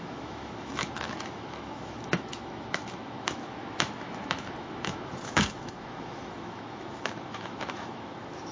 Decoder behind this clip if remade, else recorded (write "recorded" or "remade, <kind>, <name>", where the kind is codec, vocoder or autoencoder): remade, autoencoder, DAC-VAE